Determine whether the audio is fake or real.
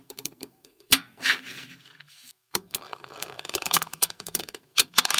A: fake